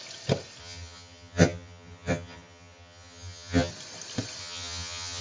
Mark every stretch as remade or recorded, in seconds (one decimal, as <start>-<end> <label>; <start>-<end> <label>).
0.0-0.6 recorded; 0.6-3.7 remade; 3.7-4.4 recorded; 4.4-5.2 remade